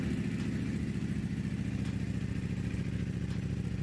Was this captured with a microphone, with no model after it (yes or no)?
yes